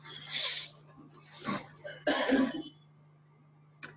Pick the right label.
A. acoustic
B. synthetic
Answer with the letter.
A